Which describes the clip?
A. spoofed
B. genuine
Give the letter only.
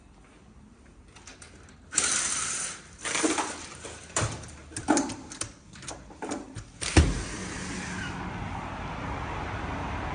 B